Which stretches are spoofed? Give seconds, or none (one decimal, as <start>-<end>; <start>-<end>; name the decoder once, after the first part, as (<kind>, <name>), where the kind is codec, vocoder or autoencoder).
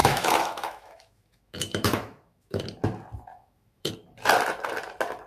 0.0-2.6 (autoencoder, DAC-VAE); 3.3-3.9